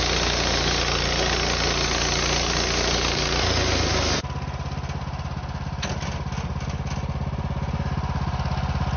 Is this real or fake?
real